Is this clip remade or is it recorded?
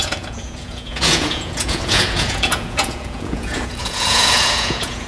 remade